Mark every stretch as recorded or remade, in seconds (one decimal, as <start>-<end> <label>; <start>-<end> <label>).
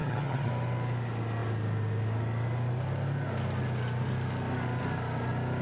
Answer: 0.0-0.5 remade; 0.5-5.6 recorded